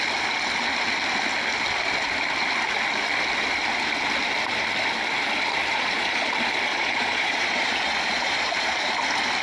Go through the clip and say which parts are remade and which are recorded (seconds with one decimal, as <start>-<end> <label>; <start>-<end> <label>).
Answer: 0.0-5.7 recorded; 5.7-6.3 remade; 6.3-6.7 recorded; 6.7-8.9 remade; 8.9-9.4 recorded